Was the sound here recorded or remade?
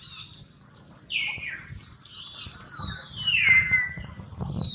recorded